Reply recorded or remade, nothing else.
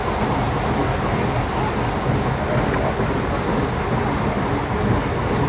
recorded